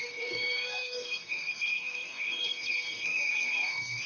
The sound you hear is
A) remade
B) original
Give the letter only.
A